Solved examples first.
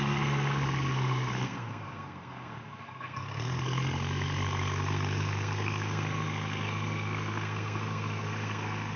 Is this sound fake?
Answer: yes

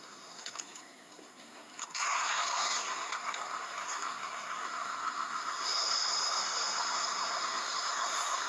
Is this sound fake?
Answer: yes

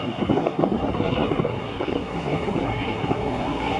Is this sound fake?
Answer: yes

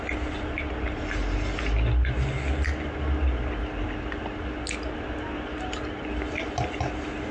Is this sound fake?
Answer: no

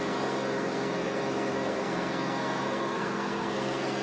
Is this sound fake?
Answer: yes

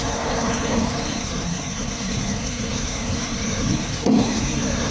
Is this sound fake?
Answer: yes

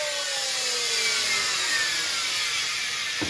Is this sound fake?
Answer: no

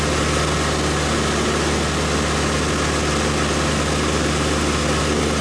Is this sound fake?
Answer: no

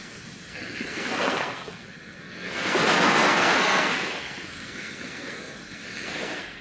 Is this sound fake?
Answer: yes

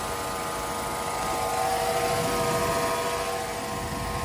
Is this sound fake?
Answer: no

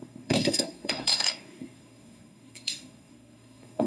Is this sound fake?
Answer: yes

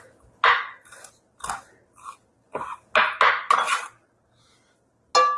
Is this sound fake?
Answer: no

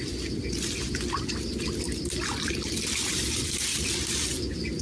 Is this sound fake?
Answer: no